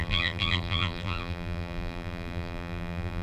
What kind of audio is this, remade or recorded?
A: remade